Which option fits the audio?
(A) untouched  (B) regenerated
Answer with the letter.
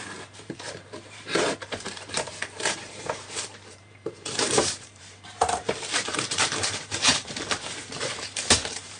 B